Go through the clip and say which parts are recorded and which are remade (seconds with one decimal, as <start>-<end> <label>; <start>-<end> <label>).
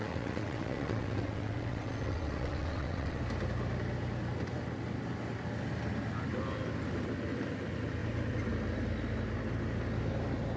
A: 0.0-3.2 remade; 3.2-10.6 recorded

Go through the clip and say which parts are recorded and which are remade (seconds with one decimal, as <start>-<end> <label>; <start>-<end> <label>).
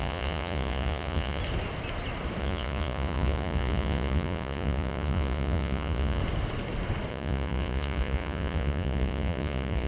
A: 0.0-1.4 remade; 1.4-2.4 recorded; 2.4-6.2 remade; 6.2-7.1 recorded; 7.1-9.9 remade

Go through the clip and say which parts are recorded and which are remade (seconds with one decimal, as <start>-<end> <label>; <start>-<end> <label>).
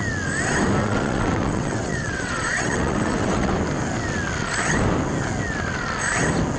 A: 0.0-0.8 recorded; 0.8-3.5 remade; 3.5-6.6 recorded